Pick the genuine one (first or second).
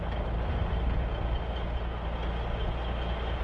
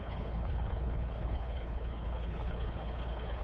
first